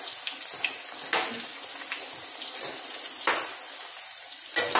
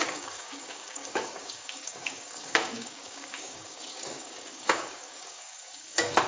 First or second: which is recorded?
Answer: first